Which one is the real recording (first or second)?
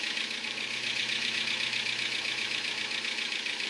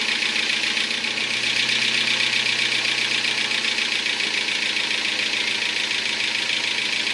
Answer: second